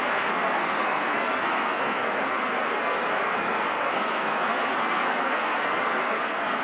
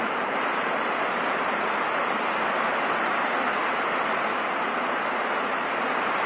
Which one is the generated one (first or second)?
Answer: first